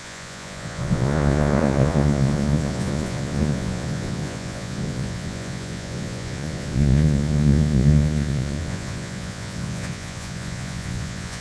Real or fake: fake